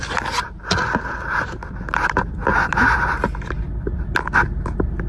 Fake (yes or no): no